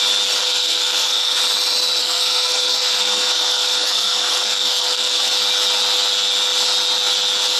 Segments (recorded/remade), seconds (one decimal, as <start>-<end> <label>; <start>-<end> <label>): 0.0-0.4 recorded; 0.4-1.4 remade; 1.4-2.0 recorded; 2.0-5.3 remade; 5.3-7.6 recorded